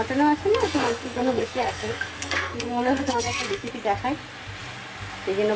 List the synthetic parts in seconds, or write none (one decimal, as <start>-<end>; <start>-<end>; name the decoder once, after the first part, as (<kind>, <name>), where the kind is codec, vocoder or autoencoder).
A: 0.5-3.7 (codec, SNAC)